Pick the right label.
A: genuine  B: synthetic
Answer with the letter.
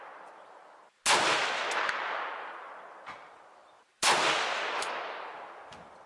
A